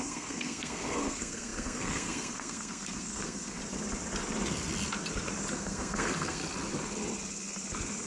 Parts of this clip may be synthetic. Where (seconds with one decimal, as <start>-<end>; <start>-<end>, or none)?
0.0-3.6; 5.5-6.4